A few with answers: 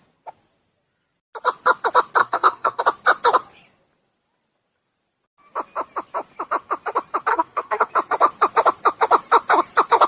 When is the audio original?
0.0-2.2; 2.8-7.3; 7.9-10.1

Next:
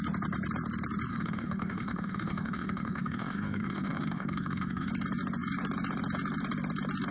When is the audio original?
0.0-1.1; 4.9-7.1

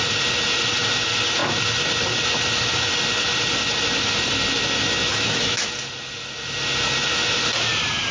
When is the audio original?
0.0-5.1; 5.6-8.1

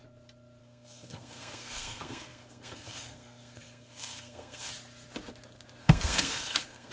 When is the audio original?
0.0-0.6; 4.7-5.8

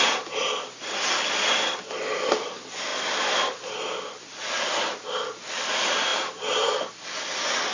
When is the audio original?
0.0-6.1; 6.9-7.7

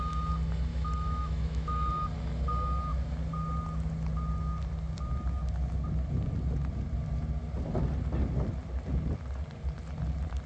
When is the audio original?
0.0-0.7; 1.9-10.5

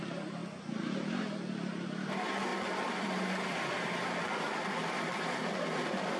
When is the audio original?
0.0-6.2

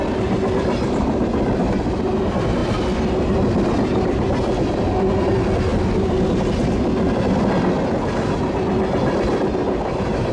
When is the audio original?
0.0-10.3